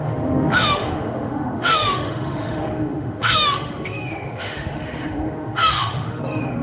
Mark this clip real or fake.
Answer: fake